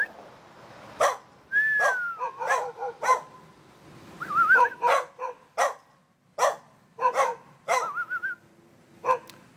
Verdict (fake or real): real